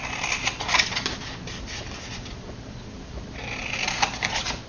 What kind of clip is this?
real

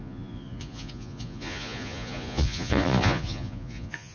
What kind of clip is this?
fake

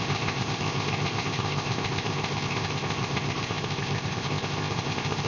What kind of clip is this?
fake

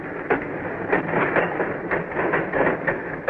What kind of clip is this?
fake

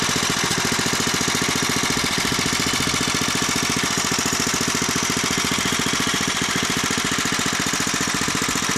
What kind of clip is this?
real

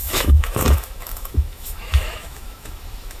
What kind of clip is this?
fake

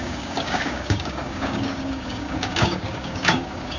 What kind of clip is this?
fake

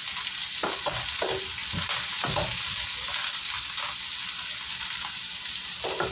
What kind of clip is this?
real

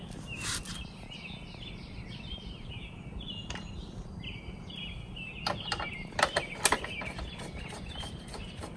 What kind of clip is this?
real